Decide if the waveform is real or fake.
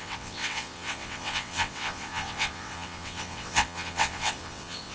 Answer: fake